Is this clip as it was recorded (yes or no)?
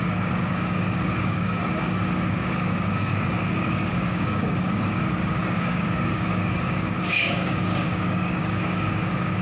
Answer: no